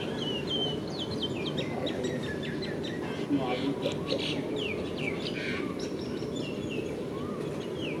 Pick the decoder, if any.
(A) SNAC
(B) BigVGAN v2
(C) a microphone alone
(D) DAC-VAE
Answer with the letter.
C